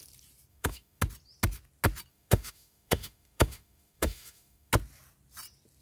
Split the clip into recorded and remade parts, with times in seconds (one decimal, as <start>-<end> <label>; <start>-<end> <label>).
0.0-0.5 recorded; 0.5-1.0 remade; 1.0-2.1 recorded; 2.1-4.7 remade; 4.7-5.8 recorded